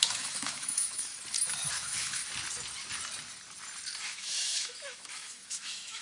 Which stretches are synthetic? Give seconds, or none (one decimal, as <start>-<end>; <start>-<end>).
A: 0.0-1.1; 1.7-2.2; 4.0-6.0